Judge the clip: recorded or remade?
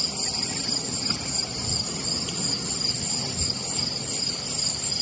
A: recorded